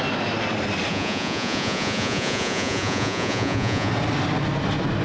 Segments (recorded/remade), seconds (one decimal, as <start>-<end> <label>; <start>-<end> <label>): 0.0-0.9 recorded; 0.9-3.9 remade; 3.9-5.0 recorded